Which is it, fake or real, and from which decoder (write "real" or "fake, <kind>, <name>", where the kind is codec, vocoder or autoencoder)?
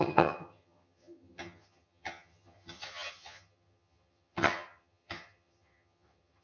fake, vocoder, HiFi-GAN